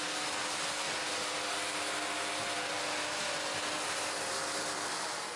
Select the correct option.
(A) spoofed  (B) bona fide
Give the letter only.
B